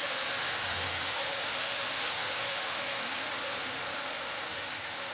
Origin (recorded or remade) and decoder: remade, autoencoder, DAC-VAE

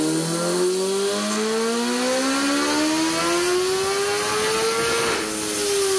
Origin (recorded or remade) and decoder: recorded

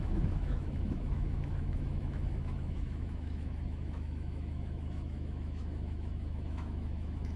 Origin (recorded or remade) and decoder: remade, autoencoder, DAC-VAE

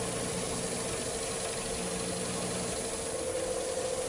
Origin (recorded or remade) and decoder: recorded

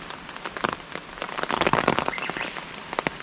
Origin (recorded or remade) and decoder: recorded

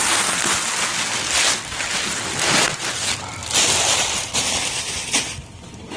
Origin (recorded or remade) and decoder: recorded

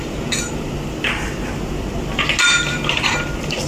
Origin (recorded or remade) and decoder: recorded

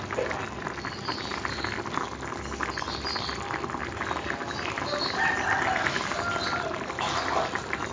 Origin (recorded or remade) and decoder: recorded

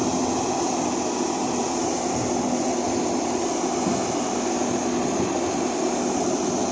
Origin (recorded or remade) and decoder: recorded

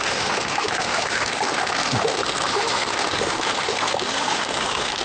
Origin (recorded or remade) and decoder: remade, autoencoder, DAC-VAE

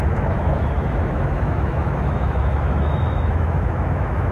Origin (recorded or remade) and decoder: remade, autoencoder, DAC-VAE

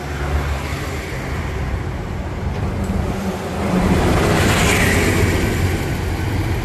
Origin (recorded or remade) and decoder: recorded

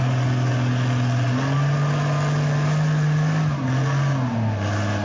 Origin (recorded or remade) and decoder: recorded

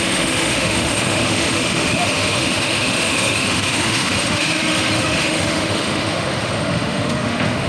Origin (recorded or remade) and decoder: remade, autoencoder, DAC-VAE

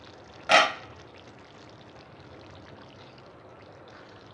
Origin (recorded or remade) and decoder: recorded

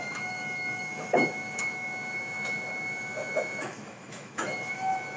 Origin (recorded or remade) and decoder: remade, autoencoder, DAC-VAE